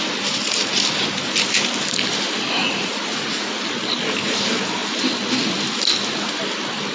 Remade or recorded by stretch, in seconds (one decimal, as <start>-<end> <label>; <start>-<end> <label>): 0.0-2.6 recorded; 2.6-3.6 remade; 3.6-6.9 recorded